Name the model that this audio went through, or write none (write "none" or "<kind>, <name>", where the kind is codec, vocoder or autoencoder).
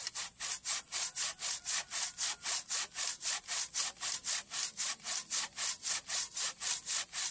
none